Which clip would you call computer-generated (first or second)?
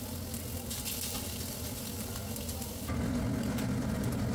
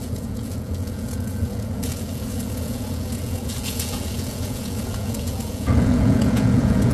second